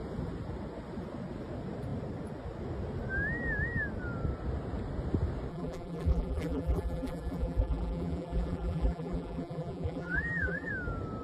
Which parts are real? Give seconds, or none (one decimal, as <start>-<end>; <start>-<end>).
0.0-5.5; 10.7-11.2